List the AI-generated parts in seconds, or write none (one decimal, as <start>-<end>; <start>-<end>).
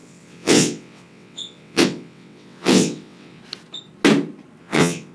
0.0-3.4; 4.6-5.1